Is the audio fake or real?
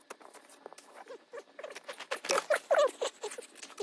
real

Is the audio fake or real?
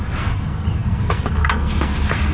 fake